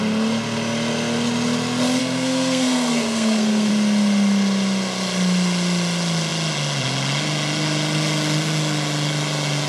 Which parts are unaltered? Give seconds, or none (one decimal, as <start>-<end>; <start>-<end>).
0.0-2.0; 3.7-9.7